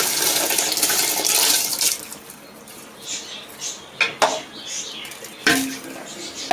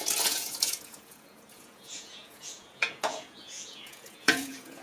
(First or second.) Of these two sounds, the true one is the first